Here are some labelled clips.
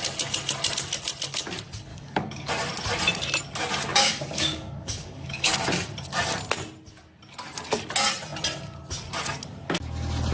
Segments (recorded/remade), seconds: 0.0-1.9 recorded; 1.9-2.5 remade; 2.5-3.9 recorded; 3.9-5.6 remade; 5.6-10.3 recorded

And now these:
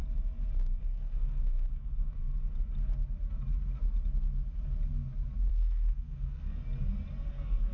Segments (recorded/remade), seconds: 0.0-0.8 recorded; 0.8-2.2 remade; 2.2-5.5 recorded; 5.5-6.6 remade; 6.6-7.3 recorded; 7.3-7.7 remade

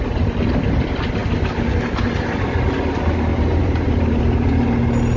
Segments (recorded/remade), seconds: 0.0-3.3 recorded; 3.3-4.2 remade; 4.2-5.2 recorded

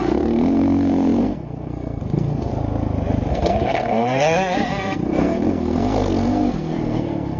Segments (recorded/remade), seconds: 0.0-2.5 remade; 2.5-3.3 recorded; 3.3-7.4 remade

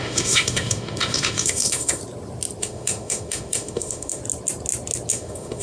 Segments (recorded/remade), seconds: 0.0-2.0 remade; 2.0-2.6 recorded; 2.6-4.2 remade; 4.2-5.1 recorded; 5.1-5.6 remade

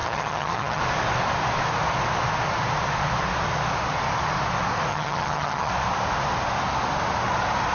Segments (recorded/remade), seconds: 0.0-0.8 remade; 0.8-4.9 recorded; 4.9-5.7 remade; 5.7-7.7 recorded

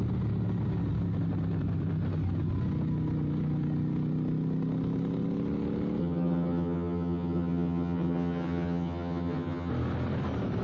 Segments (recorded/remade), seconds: 0.0-6.0 recorded; 6.0-9.7 remade; 9.7-10.6 recorded